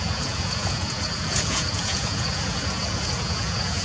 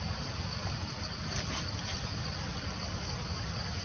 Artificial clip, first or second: first